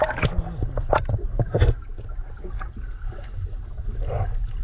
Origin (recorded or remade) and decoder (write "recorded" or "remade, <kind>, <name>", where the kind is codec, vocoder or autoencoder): recorded